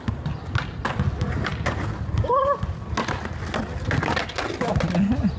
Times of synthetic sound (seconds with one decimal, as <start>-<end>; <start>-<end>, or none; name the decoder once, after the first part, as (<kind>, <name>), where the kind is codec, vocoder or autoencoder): none